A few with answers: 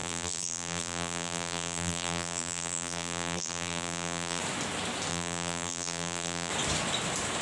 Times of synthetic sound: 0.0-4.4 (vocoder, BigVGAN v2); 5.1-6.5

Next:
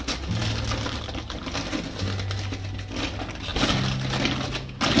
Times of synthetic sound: none

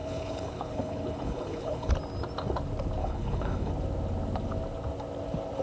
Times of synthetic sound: 0.0-1.9 (codec, HILCodec); 3.0-3.7

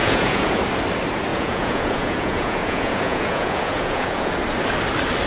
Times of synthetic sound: 0.0-0.6 (vocoder, Vocos); 1.3-4.4

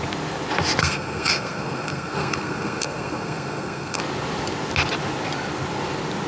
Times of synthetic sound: 0.8-4.0 (codec, SNAC)